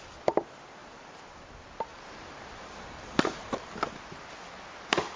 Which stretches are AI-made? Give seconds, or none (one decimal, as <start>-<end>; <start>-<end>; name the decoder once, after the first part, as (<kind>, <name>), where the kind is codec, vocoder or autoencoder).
0.8-1.4 (vocoder, BigVGAN v2); 1.9-3.7